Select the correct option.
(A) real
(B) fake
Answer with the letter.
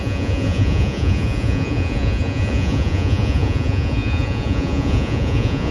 B